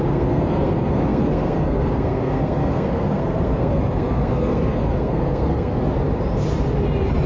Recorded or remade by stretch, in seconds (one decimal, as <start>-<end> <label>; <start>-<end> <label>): 0.0-5.8 remade; 5.8-7.3 recorded